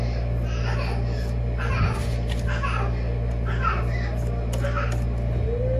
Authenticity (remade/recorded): recorded